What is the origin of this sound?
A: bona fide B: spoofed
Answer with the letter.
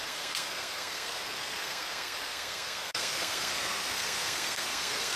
B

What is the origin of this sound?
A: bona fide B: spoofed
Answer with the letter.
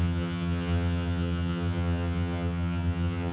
B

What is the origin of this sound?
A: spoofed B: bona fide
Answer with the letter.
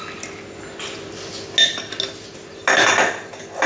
B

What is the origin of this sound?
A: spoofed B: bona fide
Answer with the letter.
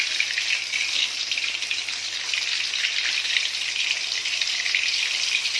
B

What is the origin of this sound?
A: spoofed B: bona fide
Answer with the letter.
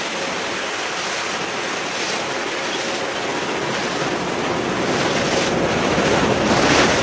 B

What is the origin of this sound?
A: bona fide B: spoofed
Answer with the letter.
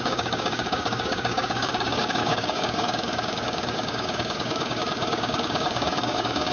B